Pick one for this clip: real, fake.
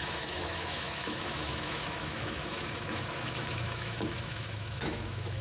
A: fake